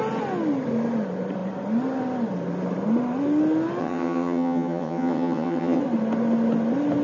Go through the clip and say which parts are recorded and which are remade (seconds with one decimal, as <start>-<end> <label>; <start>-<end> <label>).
0.0-3.8 recorded; 3.8-5.8 remade; 5.8-7.0 recorded